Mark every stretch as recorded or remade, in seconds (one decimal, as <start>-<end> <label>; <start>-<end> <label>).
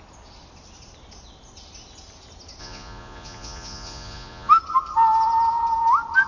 0.0-2.6 recorded; 2.6-4.5 remade; 4.5-6.3 recorded